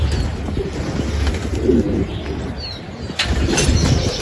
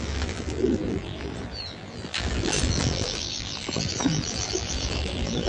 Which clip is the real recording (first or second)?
first